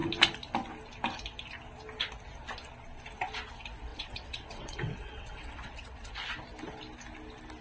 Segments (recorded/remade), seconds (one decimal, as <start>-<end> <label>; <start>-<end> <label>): 0.0-3.9 recorded; 3.9-6.1 remade; 6.1-7.6 recorded